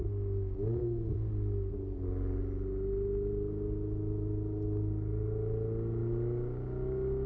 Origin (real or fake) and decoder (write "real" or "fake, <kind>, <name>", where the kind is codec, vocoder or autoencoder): real